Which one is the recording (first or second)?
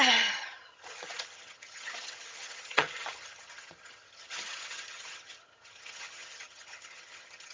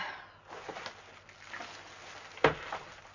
second